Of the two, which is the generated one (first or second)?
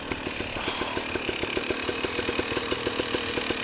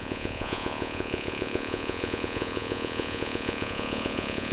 second